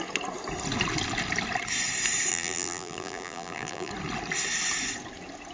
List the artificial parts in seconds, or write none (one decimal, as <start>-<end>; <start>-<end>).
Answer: 2.3-3.9